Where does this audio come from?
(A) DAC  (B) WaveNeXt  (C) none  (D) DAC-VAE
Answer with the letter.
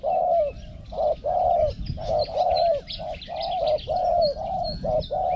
C